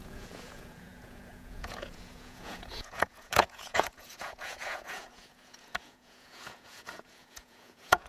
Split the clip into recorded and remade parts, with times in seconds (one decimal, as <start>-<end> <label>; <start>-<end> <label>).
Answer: 0.0-8.1 remade